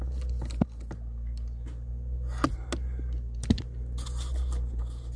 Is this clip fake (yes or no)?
no